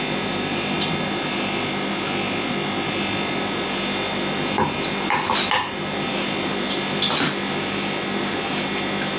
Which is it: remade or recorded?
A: recorded